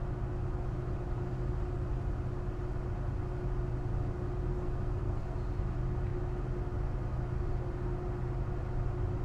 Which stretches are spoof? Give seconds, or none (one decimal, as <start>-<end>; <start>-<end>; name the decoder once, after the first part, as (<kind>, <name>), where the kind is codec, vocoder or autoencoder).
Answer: 4.5-5.4 (codec, SNAC)